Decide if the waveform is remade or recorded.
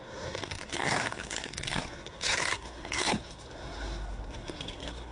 remade